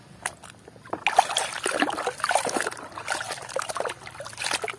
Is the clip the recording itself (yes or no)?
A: yes